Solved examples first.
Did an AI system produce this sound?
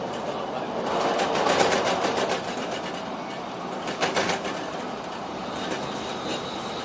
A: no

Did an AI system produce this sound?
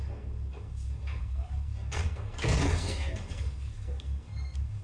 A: yes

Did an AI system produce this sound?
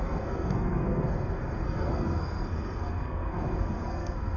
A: yes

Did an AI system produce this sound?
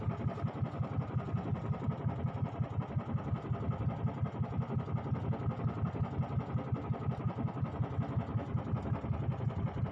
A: no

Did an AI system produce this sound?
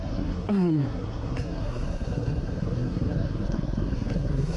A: yes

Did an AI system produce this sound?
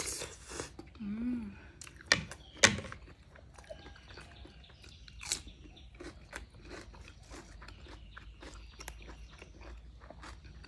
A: no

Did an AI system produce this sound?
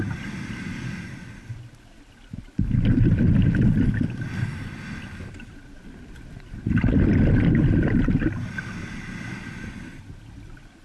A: no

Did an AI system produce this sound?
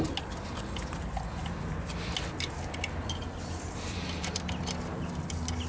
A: no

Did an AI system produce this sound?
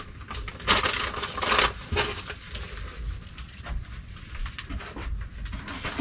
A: no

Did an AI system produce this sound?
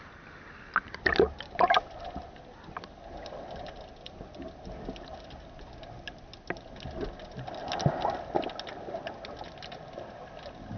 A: no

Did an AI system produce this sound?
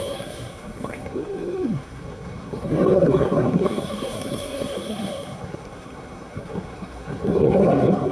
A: yes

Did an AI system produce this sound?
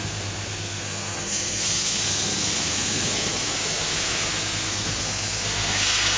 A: yes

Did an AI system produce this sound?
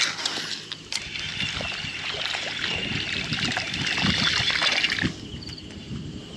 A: no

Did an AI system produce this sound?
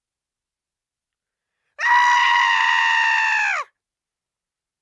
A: no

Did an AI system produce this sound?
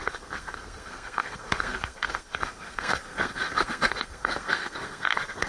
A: yes